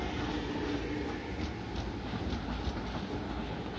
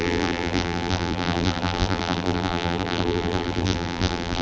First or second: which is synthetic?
second